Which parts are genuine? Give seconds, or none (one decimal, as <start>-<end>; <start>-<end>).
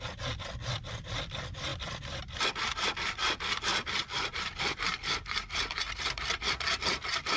0.0-7.4